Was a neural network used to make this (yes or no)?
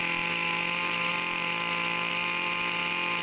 no